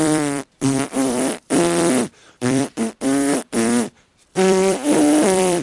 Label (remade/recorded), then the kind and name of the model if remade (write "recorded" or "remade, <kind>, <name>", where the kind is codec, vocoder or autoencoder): remade, vocoder, BigVGAN v2